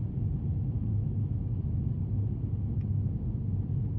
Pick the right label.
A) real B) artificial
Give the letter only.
A